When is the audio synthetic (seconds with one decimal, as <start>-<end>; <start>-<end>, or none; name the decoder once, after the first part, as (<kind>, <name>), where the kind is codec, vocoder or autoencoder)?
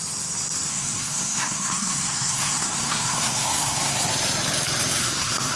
0.7-4.1 (codec, SNAC); 5.0-5.6